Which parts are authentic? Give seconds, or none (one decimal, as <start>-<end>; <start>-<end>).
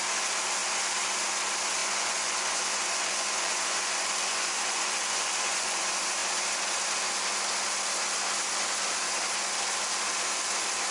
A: 0.0-1.8; 5.8-10.9